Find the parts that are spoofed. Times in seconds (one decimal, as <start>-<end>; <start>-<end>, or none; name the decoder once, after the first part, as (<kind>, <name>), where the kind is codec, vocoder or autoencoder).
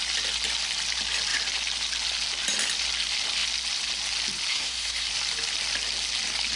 4.5-5.1 (codec, SNAC)